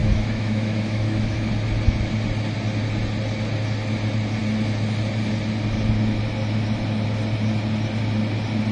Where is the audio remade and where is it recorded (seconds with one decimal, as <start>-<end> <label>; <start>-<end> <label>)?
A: 0.0-1.5 remade; 1.5-8.7 recorded